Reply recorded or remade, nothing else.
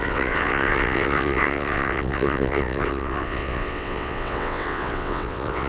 remade